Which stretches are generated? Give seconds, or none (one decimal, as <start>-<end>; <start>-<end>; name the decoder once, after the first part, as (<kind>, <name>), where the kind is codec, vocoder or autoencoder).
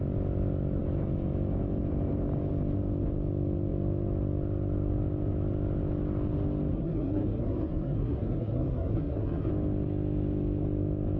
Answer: 6.7-9.5 (codec, SNAC)